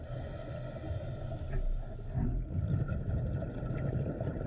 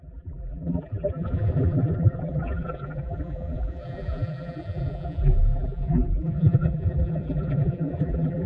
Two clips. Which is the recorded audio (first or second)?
first